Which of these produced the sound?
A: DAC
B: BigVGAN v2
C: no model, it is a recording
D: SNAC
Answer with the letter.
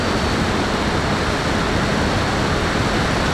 C